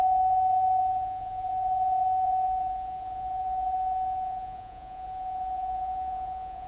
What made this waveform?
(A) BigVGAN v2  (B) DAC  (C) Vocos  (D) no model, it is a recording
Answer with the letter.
C